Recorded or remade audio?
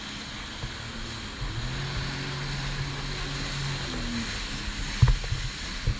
recorded